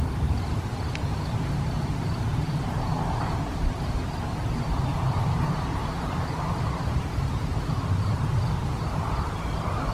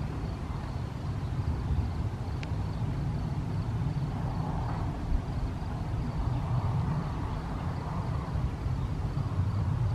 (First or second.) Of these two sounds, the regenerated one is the first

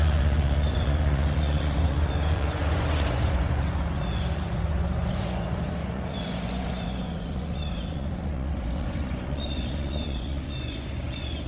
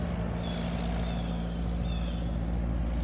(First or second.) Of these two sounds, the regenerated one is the first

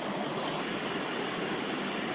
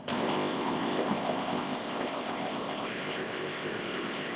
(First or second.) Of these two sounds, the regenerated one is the second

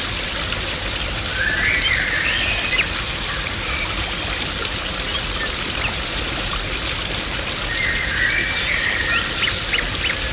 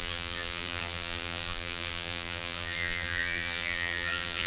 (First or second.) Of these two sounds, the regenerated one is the second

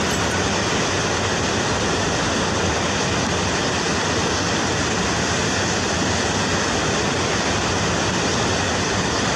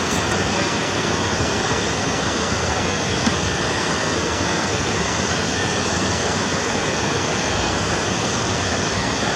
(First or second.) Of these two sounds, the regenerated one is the second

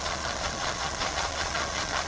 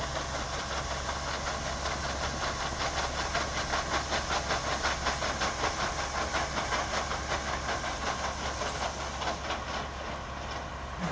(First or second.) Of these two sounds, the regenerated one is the first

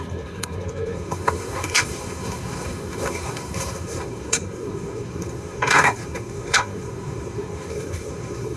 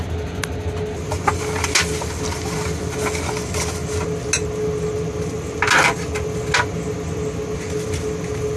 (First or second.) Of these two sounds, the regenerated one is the first